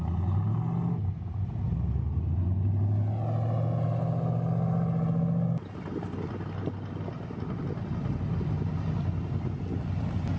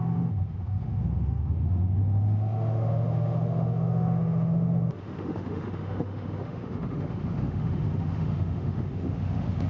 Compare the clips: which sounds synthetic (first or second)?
second